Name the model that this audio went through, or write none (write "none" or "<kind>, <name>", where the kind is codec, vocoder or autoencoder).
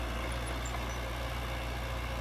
none